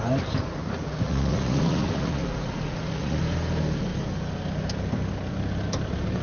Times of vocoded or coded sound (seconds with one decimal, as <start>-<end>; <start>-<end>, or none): 0.4-3.2